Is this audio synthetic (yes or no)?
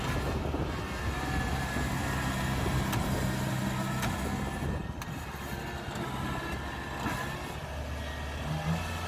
no